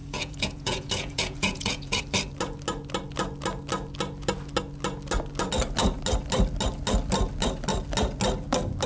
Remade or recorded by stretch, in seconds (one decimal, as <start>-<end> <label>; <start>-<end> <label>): 0.0-2.0 remade; 2.0-8.9 recorded